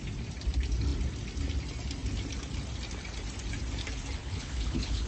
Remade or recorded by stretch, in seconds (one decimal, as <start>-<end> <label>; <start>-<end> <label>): 0.0-4.2 recorded; 4.2-5.1 remade